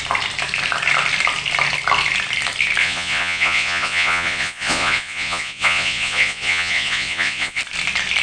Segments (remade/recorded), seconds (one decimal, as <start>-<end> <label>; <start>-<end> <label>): 0.0-2.8 recorded; 2.8-7.6 remade; 7.6-8.2 recorded